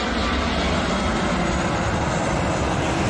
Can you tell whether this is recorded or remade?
recorded